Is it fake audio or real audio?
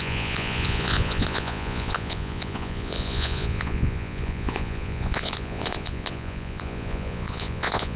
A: fake